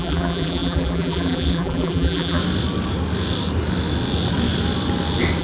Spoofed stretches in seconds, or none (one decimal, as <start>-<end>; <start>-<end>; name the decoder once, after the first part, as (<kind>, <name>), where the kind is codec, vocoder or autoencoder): 0.0-2.4 (vocoder, BigVGAN v2)

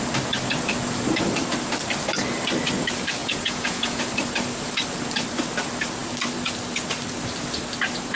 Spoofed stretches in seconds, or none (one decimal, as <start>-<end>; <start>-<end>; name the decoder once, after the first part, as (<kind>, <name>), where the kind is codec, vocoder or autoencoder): 3.2-4.0 (vocoder, Vocos)

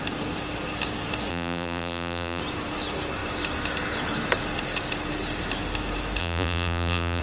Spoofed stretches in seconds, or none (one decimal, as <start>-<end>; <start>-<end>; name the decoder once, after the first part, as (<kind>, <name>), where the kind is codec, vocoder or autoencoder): 1.3-2.4 (vocoder, BigVGAN v2); 6.2-7.2

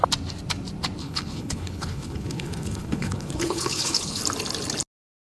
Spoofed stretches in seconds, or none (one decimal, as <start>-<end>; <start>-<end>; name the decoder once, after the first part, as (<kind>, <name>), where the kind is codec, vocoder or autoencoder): 1.0-4.2 (codec, HILCodec)

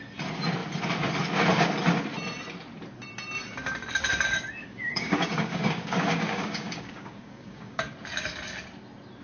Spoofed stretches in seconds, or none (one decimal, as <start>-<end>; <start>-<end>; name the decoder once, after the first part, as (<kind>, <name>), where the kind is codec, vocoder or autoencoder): 4.6-7.9 (codec, DAC)